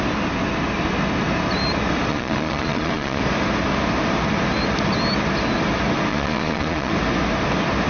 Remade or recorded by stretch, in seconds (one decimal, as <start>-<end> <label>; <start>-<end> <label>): 0.0-2.1 recorded; 2.1-3.2 remade; 3.2-6.1 recorded; 6.1-6.9 remade; 6.9-7.9 recorded